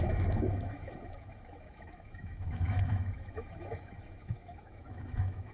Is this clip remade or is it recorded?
remade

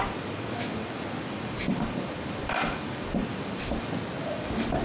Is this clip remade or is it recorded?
recorded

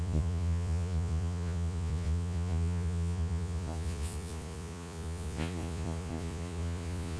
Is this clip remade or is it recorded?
remade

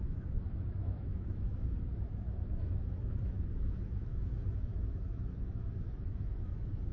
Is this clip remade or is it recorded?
remade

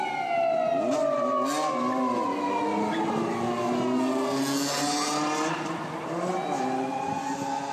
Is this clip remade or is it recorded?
recorded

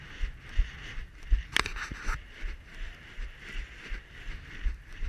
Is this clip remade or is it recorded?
recorded